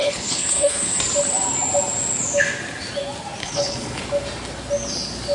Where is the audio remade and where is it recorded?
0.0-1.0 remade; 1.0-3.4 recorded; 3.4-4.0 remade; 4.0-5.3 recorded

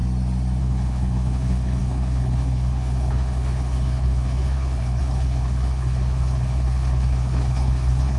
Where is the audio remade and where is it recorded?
0.0-0.6 recorded; 0.6-8.2 remade

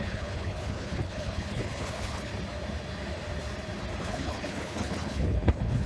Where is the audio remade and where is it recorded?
0.0-2.3 remade; 2.3-4.0 recorded; 4.0-5.9 remade

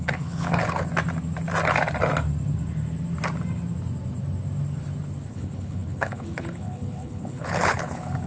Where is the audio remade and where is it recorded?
0.0-0.9 remade; 0.9-5.3 recorded; 5.3-8.3 remade

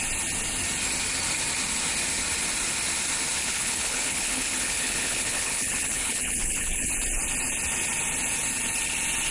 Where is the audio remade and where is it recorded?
0.0-3.4 recorded; 3.4-6.9 remade; 6.9-9.3 recorded